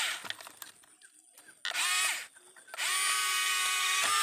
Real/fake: real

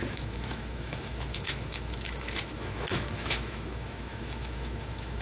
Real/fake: fake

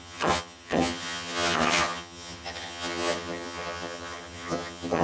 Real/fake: fake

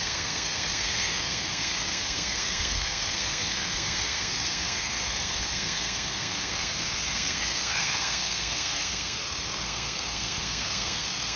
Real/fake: fake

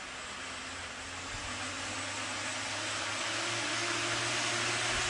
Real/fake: real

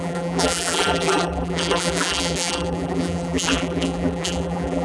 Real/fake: fake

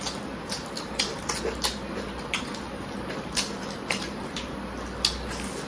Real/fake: real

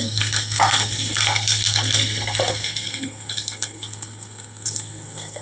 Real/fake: fake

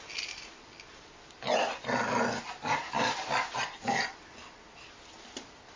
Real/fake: real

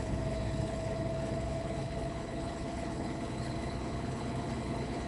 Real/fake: fake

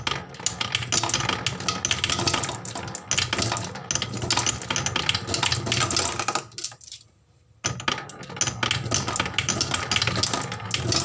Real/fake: real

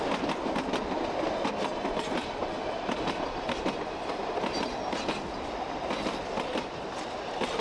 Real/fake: real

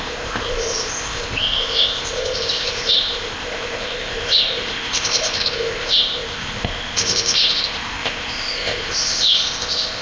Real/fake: fake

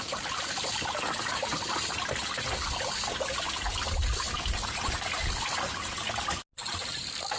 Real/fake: real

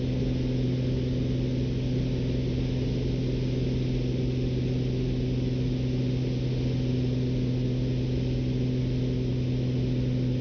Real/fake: real